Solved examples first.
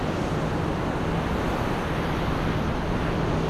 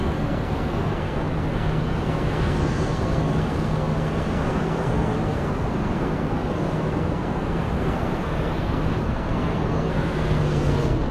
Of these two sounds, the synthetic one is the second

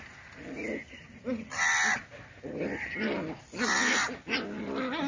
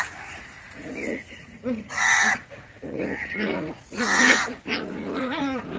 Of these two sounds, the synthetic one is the second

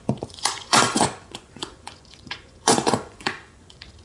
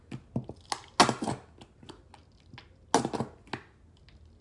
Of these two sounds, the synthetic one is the first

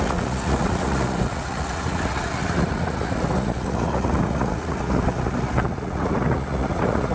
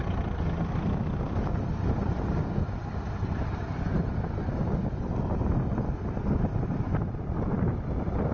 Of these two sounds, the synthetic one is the first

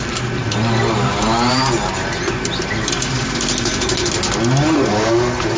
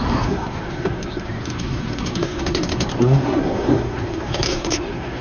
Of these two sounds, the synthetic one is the second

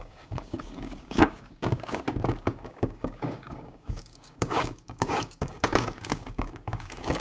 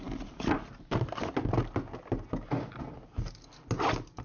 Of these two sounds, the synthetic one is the first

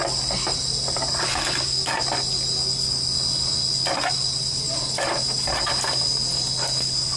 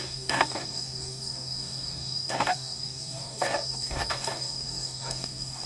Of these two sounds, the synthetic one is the second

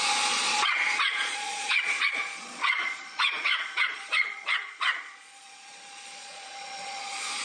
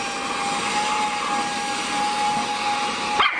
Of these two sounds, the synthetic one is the first